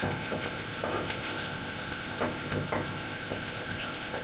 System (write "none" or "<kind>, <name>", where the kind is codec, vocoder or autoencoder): codec, ZipCodec